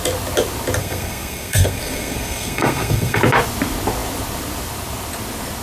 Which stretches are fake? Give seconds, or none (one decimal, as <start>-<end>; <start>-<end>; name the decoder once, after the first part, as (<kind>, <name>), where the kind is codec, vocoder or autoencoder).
0.8-3.2 (codec, SNAC)